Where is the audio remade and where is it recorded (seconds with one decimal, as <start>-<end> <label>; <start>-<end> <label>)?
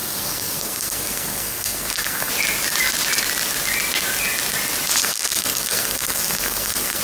0.0-2.3 remade; 2.3-5.0 recorded; 5.0-7.0 remade